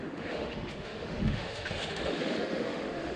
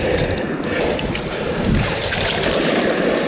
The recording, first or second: second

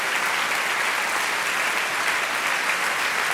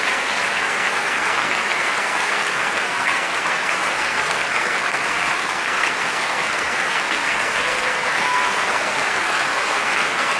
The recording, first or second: first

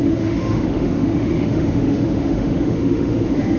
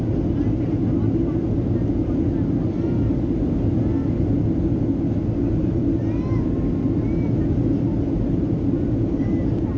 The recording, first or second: second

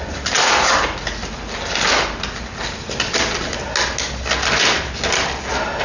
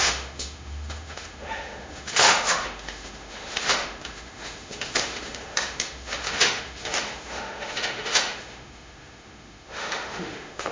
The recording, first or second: first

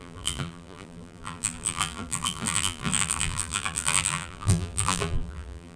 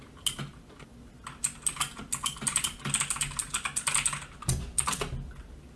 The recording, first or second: second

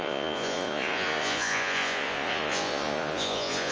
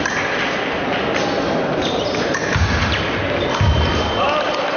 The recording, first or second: second